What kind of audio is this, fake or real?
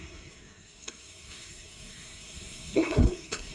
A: fake